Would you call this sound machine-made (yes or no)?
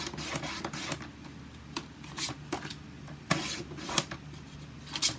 no